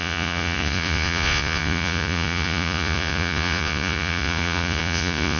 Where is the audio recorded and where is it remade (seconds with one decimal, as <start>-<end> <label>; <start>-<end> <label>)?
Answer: 0.0-5.4 remade